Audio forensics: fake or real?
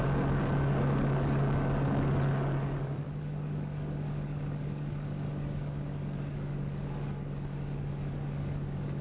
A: fake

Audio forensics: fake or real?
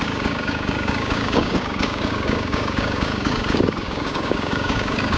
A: fake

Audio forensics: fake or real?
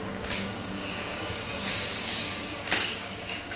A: fake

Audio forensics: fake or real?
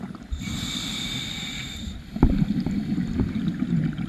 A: real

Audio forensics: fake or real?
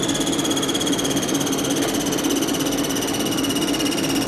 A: real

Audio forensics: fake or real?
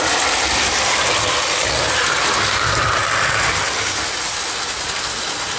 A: real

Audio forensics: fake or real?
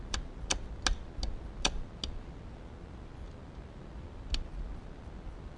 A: real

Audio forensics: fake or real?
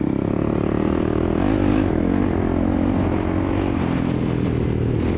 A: real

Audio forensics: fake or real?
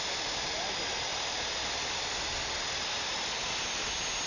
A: real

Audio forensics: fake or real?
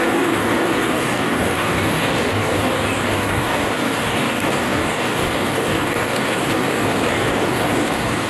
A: fake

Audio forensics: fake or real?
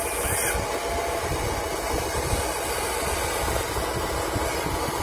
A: real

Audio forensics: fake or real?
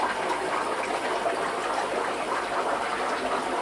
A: real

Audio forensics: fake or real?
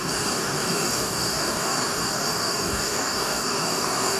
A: fake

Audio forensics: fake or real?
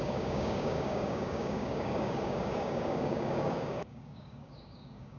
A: fake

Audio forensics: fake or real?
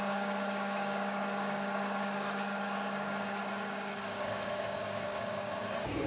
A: fake